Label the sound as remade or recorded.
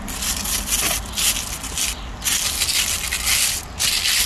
recorded